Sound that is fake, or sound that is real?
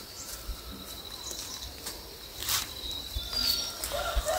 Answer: real